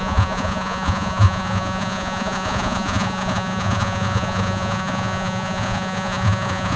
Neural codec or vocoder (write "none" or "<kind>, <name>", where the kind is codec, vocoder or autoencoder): vocoder, Vocos